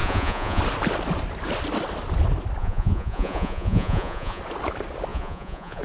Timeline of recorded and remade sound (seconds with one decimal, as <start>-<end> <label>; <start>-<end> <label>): 0.0-0.6 remade; 0.6-2.6 recorded; 2.6-4.4 remade; 4.4-5.1 recorded; 5.1-5.8 remade